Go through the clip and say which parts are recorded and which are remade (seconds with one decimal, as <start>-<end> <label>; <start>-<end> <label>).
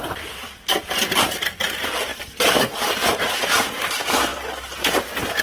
0.0-2.1 recorded; 2.1-3.9 remade; 3.9-5.4 recorded